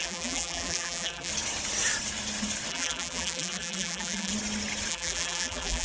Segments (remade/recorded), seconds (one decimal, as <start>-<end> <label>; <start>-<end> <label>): 0.0-1.3 remade; 1.3-2.7 recorded; 2.7-4.3 remade; 4.3-4.9 recorded; 4.9-5.8 remade